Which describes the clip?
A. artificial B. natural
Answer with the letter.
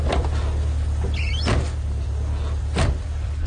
B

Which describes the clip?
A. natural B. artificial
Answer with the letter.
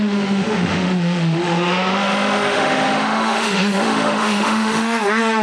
B